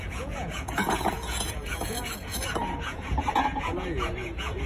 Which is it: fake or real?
fake